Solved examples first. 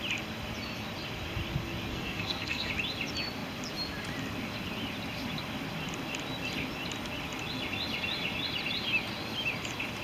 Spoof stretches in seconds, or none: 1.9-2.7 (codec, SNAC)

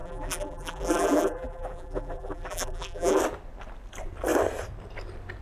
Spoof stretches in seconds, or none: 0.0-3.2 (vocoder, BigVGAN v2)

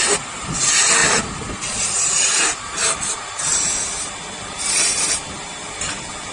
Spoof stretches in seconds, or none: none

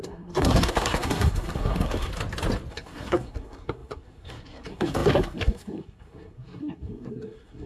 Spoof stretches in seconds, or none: 0.0-2.1 (codec, SNAC); 2.7-7.7

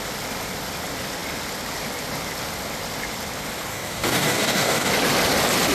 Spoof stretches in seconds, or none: 3.7-4.9 (codec, DAC)

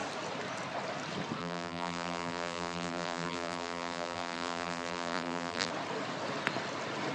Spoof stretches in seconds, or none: 1.4-5.7 (vocoder, BigVGAN v2)

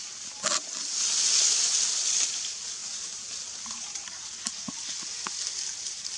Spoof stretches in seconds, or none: none